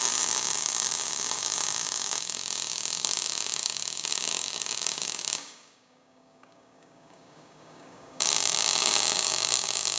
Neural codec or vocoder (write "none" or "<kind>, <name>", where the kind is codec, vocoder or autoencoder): codec, DAC